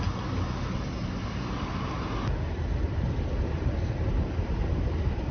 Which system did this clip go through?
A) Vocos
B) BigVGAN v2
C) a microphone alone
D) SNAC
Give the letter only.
C